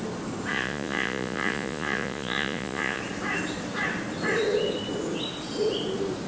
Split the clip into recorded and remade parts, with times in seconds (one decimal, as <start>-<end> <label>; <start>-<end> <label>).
0.0-0.5 recorded; 0.5-3.0 remade; 3.0-6.3 recorded

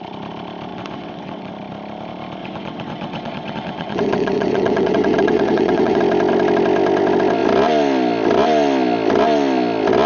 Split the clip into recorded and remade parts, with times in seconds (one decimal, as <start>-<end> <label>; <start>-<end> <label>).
0.0-0.7 recorded; 0.7-1.5 remade; 1.5-2.4 recorded; 2.4-6.0 remade; 6.0-10.1 recorded

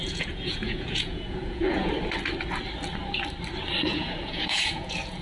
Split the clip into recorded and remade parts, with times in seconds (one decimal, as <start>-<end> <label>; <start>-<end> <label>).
0.0-1.9 remade; 1.9-3.9 recorded; 3.9-5.2 remade

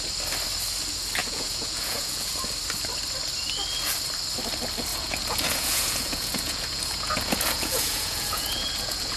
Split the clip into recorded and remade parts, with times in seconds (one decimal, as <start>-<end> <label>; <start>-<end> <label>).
0.0-1.2 recorded; 1.2-2.3 remade; 2.3-4.9 recorded; 4.9-9.2 remade